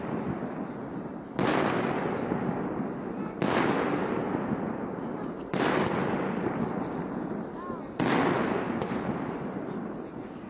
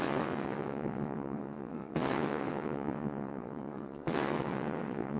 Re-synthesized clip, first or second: second